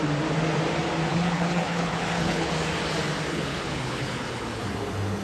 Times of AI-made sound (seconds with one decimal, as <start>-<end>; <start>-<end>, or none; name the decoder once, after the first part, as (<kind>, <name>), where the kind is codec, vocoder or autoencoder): 1.1-2.5 (codec, HILCodec); 3.3-4.7